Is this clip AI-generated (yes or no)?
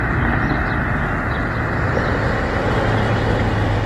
no